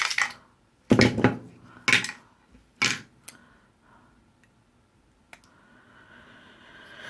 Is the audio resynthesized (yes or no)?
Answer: no